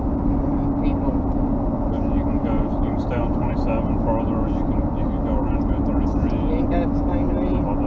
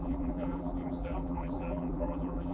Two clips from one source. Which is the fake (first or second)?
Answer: second